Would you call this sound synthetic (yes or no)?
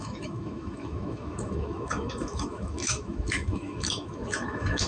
yes